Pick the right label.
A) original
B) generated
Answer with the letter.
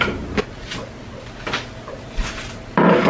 A